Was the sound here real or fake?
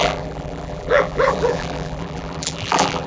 fake